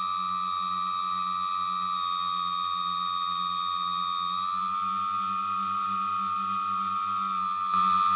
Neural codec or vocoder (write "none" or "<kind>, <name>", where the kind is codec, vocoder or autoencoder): none